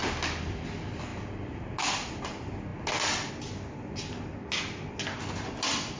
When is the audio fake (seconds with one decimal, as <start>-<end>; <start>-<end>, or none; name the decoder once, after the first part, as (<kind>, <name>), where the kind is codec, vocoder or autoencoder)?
none